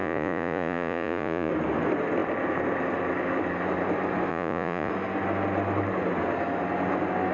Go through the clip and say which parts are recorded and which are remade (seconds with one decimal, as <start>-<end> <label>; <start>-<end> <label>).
0.0-1.5 remade; 1.5-4.3 recorded; 4.3-4.9 remade; 4.9-7.3 recorded